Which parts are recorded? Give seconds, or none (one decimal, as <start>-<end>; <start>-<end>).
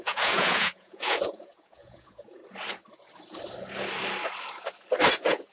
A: 2.4-5.1